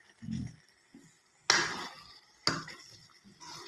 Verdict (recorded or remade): recorded